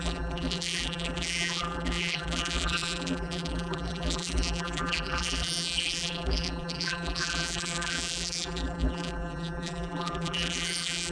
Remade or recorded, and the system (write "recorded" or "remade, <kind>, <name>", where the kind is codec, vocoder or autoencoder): remade, vocoder, BigVGAN v2